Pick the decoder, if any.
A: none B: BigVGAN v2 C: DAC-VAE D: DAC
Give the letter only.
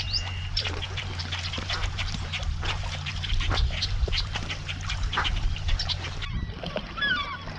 B